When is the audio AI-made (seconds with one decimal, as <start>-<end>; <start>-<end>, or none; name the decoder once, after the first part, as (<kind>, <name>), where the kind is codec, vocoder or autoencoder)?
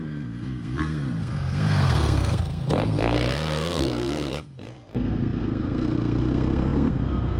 0.0-7.4 (codec, SNAC)